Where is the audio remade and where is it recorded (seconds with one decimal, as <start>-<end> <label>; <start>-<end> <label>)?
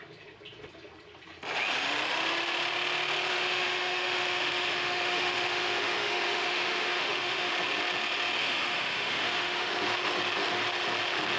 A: 0.0-3.3 recorded; 3.3-7.5 remade; 7.5-8.4 recorded; 8.4-9.7 remade; 9.7-11.4 recorded